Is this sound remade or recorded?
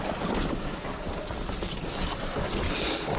recorded